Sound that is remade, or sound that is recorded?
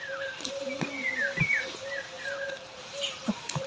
remade